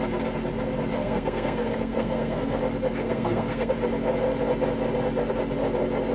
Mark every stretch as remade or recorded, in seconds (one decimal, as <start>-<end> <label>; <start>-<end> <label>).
0.0-0.9 recorded; 0.9-2.6 remade; 2.6-3.0 recorded; 3.0-3.7 remade; 3.7-6.1 recorded